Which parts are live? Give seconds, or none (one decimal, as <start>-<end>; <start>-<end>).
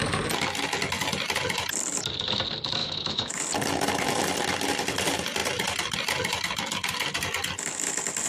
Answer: 0.0-2.8; 3.4-8.3